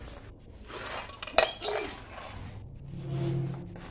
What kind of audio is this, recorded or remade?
recorded